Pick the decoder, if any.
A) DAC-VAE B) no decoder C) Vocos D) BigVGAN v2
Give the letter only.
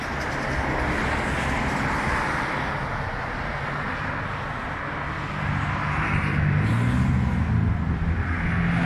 B